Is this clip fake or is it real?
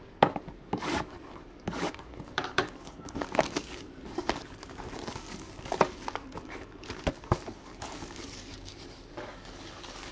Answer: fake